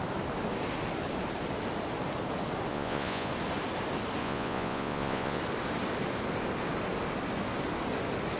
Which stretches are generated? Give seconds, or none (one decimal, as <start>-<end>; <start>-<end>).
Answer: 2.7-3.3; 4.2-5.4